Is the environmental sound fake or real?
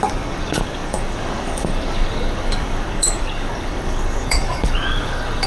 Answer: fake